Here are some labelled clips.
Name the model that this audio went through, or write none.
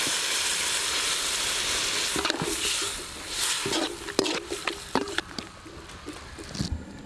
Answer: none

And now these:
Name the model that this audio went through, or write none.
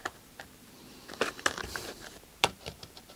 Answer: vocoder, BigVGAN v2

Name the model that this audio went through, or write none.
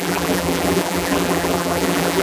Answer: vocoder, BigVGAN v2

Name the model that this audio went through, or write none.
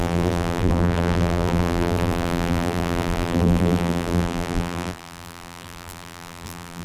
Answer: vocoder, BigVGAN v2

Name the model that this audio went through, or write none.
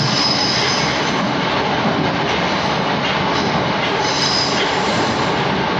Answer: none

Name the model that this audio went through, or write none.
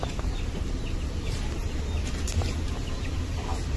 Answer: none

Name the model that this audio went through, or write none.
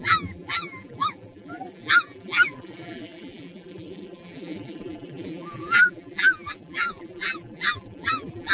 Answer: vocoder, BigVGAN v2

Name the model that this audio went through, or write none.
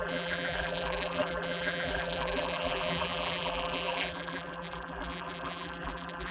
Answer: vocoder, BigVGAN v2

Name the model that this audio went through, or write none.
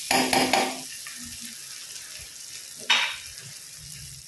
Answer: none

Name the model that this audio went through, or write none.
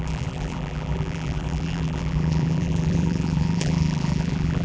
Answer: vocoder, BigVGAN v2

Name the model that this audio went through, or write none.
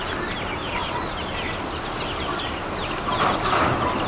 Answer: none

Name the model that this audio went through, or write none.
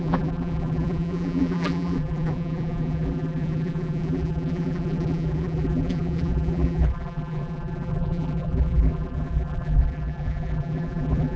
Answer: vocoder, BigVGAN v2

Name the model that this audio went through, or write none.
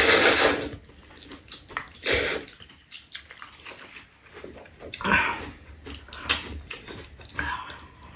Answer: none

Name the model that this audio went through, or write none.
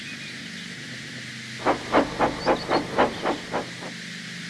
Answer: none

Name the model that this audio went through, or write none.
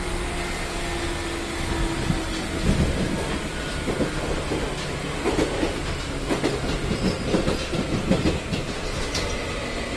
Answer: none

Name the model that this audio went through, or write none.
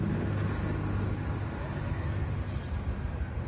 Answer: none